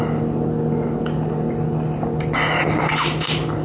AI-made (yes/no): no